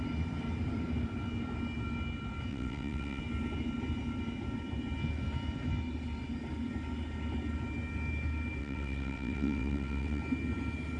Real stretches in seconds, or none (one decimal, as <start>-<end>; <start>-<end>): 0.0-2.5; 3.2-8.6; 10.2-11.0